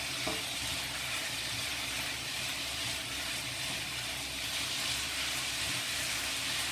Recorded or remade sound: remade